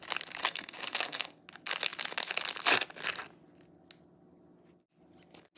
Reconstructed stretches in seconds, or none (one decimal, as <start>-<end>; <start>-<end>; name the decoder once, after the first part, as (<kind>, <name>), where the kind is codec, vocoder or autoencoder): 0.4-1.4 (codec, SNAC)